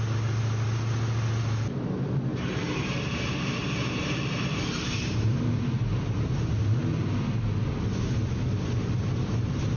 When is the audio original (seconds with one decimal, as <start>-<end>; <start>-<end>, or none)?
0.0-2.3; 5.5-9.8

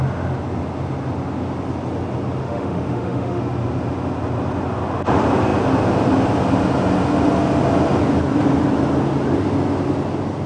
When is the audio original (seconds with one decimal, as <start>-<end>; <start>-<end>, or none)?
0.0-2.4; 3.4-10.5

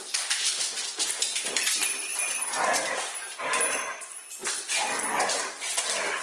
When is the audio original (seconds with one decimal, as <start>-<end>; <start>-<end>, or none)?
0.0-6.2

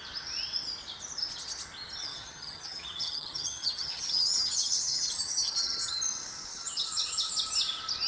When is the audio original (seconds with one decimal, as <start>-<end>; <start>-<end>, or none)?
0.0-2.0; 6.0-6.5; 7.3-8.1

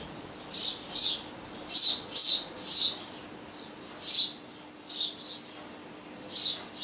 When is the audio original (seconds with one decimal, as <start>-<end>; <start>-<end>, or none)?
0.0-6.8

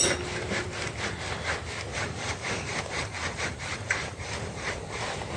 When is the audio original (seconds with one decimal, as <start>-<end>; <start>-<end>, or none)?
0.0-1.9; 5.0-5.4

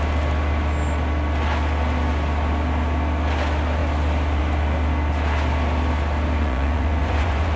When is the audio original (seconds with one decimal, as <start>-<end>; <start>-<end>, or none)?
0.0-6.4

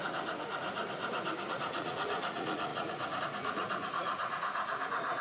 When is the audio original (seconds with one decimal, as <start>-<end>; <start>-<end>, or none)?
0.8-1.5